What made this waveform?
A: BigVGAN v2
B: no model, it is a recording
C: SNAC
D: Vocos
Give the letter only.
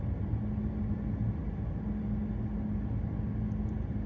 B